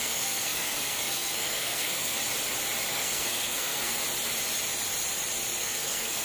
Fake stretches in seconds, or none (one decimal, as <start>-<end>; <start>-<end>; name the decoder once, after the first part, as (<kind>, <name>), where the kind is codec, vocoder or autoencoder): 0.0-2.2 (codec, SNAC); 2.9-4.0; 5.6-6.2